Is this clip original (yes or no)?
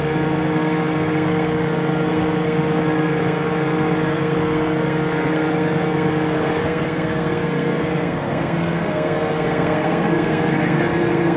no